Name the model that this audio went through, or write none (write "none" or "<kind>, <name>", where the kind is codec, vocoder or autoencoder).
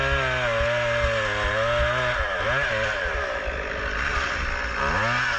none